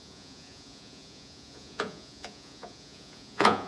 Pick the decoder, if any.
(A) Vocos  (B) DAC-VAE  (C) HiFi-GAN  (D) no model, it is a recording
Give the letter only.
A